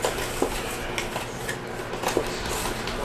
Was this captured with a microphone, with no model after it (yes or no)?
yes